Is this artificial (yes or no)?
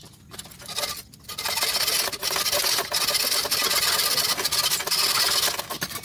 no